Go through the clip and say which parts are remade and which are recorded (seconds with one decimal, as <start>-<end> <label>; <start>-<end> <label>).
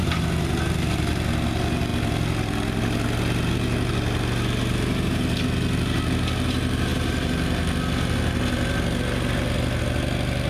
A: 0.0-10.5 recorded